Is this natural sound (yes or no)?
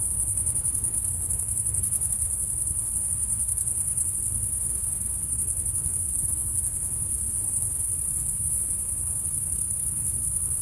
no